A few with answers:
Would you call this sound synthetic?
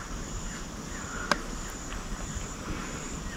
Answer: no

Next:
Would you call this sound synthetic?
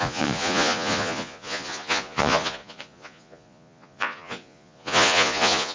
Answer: yes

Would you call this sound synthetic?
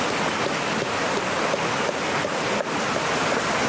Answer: no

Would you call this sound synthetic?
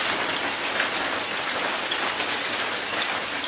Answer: no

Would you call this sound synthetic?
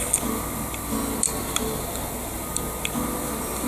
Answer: no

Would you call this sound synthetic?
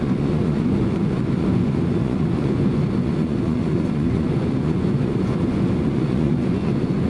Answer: yes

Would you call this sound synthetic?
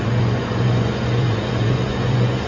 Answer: yes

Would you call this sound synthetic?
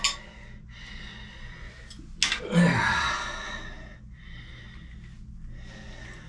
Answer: no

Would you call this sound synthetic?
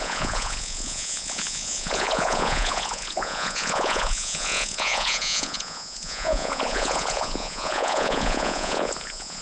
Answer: yes